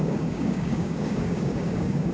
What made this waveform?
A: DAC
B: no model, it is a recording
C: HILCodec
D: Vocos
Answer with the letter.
A